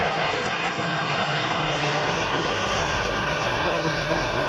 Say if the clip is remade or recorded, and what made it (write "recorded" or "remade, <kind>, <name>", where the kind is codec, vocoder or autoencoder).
remade, codec, SNAC